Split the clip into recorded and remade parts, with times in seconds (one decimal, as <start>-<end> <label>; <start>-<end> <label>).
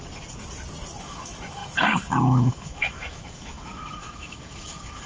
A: 0.0-1.0 recorded; 1.0-5.1 remade